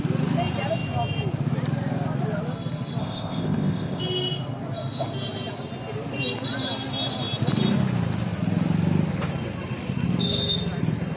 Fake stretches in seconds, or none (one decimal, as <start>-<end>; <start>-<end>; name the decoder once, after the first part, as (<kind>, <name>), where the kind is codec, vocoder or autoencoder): 3.0-4.0 (codec, ZipCodec)